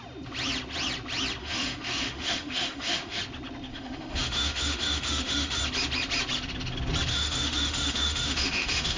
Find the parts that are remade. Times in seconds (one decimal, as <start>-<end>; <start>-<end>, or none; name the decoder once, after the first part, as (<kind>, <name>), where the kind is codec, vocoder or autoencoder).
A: 1.4-3.2 (autoencoder, DAC-VAE); 3.7-5.6; 7.1-9.0